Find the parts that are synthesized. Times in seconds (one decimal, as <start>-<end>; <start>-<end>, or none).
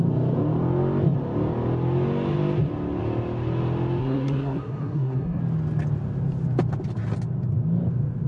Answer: 4.0-5.4